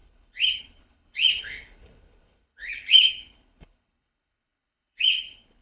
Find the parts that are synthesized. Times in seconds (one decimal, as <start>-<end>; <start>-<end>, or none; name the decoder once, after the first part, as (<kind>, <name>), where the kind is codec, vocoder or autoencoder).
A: 0.0-5.6 (codec, HILCodec)